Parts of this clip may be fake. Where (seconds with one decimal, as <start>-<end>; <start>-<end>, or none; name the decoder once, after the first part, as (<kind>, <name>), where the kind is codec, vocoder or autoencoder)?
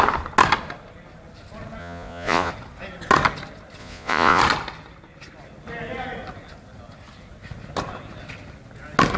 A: 1.8-2.5 (vocoder, Vocos); 3.8-4.4